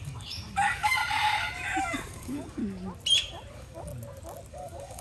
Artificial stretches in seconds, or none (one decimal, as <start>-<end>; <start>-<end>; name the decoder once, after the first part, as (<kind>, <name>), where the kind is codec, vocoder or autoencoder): 0.0-1.0 (codec, DAC); 1.8-2.6; 3.5-3.9; 4.5-5.0